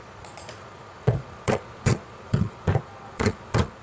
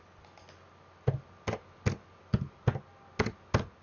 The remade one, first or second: first